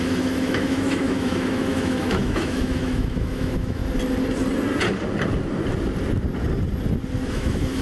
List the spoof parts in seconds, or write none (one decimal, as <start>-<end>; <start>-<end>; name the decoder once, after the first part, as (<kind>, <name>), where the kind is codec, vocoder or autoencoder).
0.0-3.8 (autoencoder, DAC-VAE); 7.3-7.8